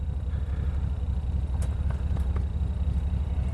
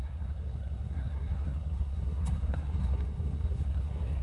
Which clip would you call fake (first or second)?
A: second